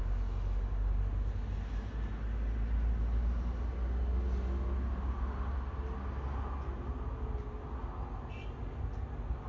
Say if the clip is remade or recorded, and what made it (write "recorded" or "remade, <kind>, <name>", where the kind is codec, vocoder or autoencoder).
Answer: recorded